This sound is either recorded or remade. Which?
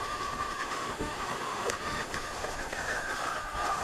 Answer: remade